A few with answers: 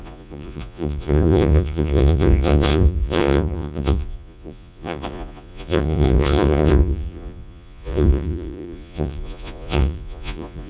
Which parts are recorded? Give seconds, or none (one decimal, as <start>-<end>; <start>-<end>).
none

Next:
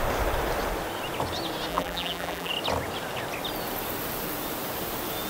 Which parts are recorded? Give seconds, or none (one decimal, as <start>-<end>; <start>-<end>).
0.0-1.7; 2.5-5.3

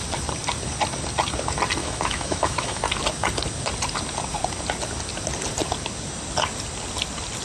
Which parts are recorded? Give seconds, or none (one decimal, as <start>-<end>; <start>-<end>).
0.0-1.8; 2.8-7.4

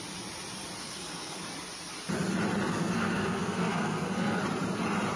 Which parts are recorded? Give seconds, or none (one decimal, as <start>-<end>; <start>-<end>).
0.0-0.8; 1.4-2.7; 4.4-5.2